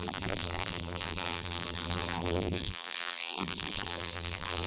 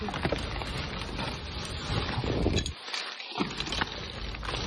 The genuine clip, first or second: second